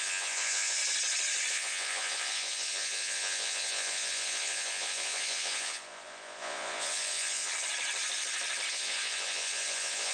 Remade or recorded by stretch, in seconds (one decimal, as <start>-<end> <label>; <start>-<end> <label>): 0.0-0.8 remade; 0.8-1.5 recorded; 1.5-7.5 remade; 7.5-8.7 recorded; 8.7-10.1 remade